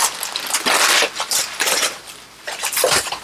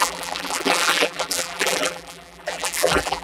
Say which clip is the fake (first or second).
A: second